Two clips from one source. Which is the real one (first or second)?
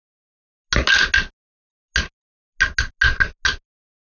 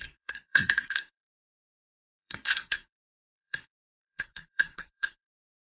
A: first